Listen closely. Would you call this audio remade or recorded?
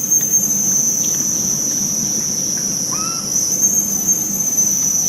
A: recorded